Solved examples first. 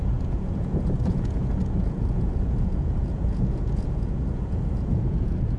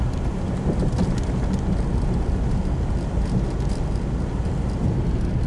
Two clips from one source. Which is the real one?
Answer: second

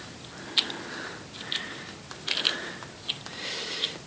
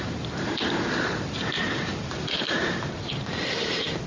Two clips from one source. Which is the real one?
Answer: first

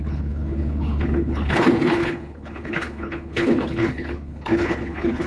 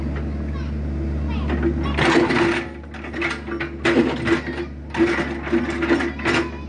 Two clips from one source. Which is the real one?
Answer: second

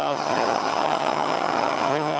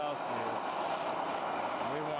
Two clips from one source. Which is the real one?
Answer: second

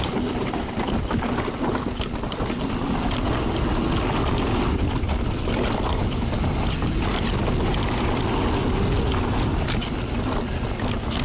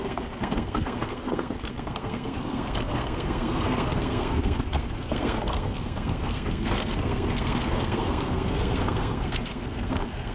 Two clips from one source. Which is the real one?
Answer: first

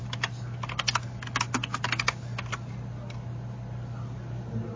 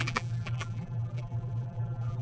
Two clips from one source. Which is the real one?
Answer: first